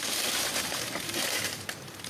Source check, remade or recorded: remade